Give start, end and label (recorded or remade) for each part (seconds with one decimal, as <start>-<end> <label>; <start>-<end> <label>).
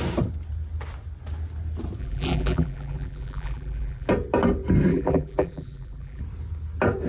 0.0-2.0 recorded; 2.0-4.1 remade; 4.1-4.9 recorded; 4.9-6.2 remade; 6.2-7.1 recorded